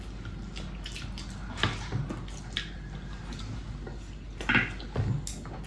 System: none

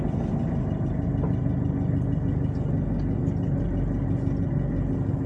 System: none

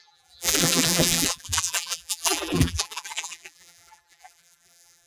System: vocoder, BigVGAN v2